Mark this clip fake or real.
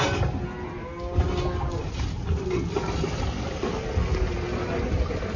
real